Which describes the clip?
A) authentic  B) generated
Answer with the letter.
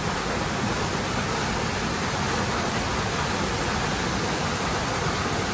A